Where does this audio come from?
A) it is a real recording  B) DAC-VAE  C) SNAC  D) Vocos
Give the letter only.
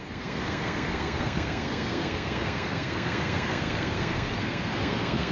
C